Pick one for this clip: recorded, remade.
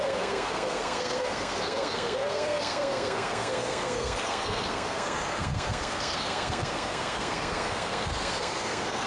remade